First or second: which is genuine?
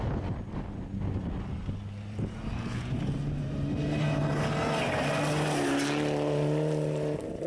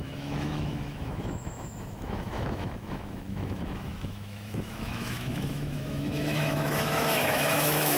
first